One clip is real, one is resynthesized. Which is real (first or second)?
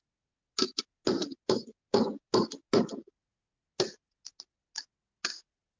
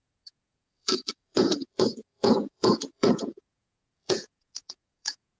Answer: first